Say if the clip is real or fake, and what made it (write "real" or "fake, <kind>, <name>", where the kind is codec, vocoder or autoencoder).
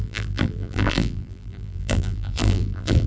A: fake, vocoder, BigVGAN v2